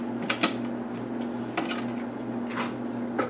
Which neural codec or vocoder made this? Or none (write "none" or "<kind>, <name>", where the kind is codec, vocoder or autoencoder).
none